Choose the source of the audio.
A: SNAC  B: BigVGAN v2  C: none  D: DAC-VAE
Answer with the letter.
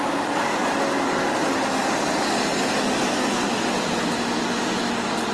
C